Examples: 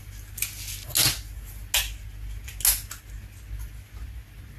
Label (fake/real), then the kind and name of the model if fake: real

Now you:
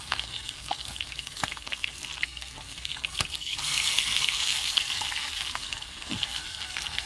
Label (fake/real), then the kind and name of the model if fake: fake, codec, SNAC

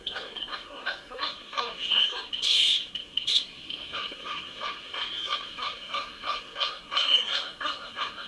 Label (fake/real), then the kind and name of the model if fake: fake, codec, SNAC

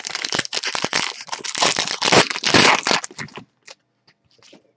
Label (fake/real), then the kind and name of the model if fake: real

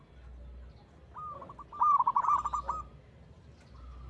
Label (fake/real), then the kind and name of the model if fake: real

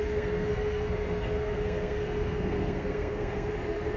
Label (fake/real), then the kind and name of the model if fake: fake, codec, SNAC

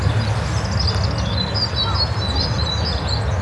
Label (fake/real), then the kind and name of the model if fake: real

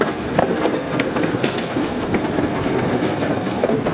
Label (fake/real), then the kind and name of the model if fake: fake, codec, SNAC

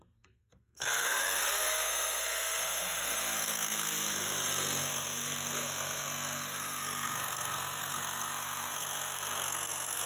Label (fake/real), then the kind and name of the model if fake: fake, codec, SNAC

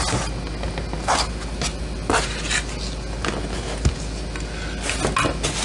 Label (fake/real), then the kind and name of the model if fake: real